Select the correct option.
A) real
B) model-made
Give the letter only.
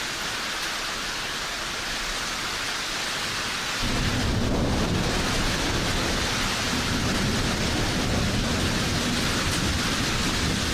A